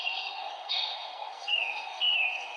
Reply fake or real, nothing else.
fake